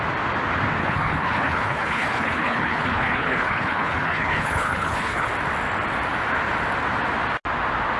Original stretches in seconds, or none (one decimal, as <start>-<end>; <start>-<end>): 0.0-0.8; 5.3-8.0